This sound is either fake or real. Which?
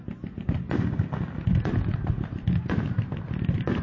real